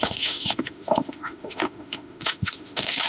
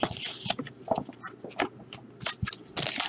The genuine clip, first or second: second